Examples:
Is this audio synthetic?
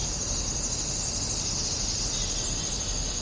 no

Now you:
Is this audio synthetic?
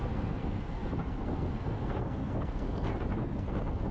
yes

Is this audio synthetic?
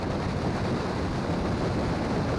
no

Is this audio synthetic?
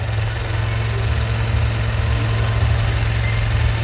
no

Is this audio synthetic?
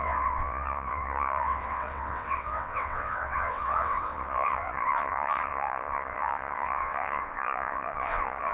yes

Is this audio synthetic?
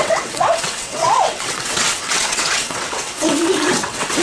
yes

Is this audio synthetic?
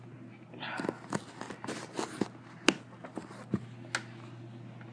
no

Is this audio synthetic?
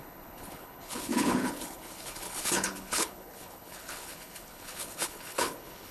yes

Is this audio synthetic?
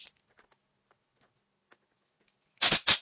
no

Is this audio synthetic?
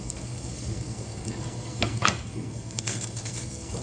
yes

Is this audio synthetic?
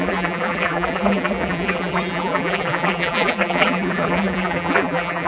yes